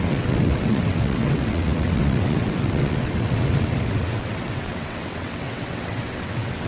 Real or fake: fake